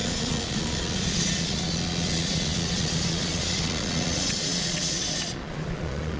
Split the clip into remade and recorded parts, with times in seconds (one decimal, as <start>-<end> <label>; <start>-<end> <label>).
0.0-6.2 remade